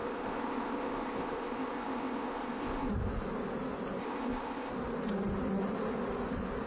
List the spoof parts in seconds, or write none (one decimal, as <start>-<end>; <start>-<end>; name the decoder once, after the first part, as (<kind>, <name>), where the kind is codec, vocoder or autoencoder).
0.0-2.9 (codec, ZipCodec); 4.0-4.7